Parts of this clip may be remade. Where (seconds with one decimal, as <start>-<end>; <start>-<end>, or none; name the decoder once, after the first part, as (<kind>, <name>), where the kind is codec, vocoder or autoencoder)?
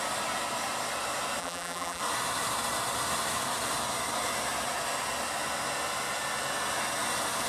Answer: 1.4-2.0 (vocoder, BigVGAN v2)